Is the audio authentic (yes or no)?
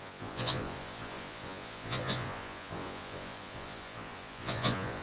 no